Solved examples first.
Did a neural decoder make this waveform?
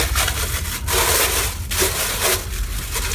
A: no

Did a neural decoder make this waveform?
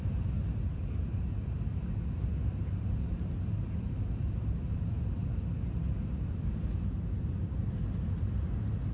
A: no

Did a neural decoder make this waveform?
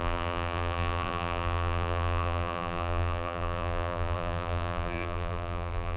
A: yes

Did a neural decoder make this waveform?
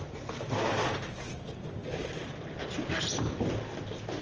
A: yes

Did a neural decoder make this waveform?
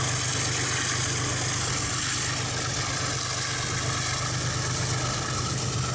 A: no